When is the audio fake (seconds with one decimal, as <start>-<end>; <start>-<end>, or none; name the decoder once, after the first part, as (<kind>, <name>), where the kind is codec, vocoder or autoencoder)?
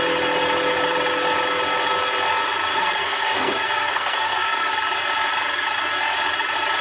2.7-4.7 (codec, SNAC)